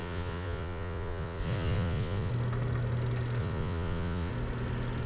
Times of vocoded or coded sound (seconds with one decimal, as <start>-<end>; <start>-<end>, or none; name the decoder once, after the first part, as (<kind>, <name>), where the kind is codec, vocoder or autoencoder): 0.0-2.3 (vocoder, Vocos); 3.4-4.3